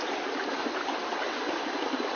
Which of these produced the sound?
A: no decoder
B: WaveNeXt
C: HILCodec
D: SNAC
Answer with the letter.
A